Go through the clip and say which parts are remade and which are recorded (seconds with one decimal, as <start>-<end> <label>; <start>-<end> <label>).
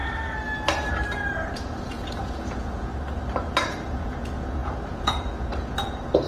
0.0-1.5 recorded; 1.5-2.9 remade; 2.9-3.5 recorded; 3.5-6.3 remade